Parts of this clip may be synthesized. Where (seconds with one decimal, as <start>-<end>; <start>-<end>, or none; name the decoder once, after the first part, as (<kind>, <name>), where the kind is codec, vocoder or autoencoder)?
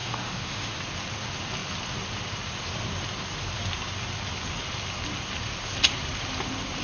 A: 0.0-0.8 (autoencoder, DAC-VAE)